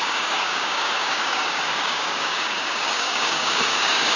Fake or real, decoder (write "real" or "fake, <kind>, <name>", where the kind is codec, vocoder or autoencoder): fake, codec, DAC